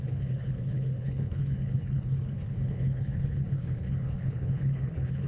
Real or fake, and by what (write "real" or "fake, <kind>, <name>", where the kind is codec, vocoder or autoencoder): fake, codec, HILCodec